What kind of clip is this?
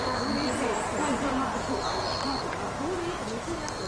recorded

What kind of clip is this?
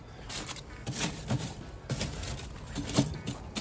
recorded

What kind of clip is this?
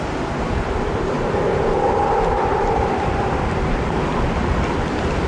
recorded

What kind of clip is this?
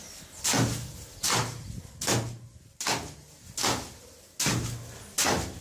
recorded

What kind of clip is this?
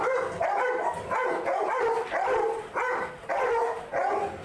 recorded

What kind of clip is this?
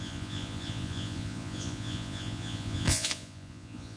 remade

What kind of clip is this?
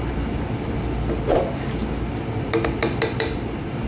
recorded